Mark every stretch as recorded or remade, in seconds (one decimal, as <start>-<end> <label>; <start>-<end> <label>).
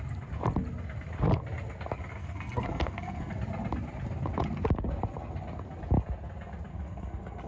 0.0-2.2 recorded; 2.2-3.3 remade; 3.3-6.7 recorded; 6.7-7.5 remade